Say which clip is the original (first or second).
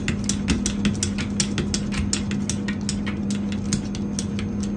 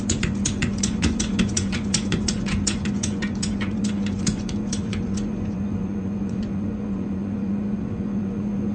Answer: first